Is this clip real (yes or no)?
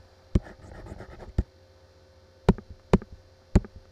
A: yes